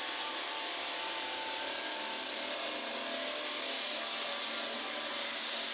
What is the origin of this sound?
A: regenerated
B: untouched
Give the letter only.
B